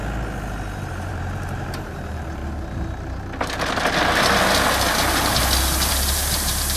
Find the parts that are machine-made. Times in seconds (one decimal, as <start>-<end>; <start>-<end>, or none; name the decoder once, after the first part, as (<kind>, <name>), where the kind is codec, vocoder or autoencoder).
0.9-2.4 (vocoder, BigVGAN v2); 5.9-6.8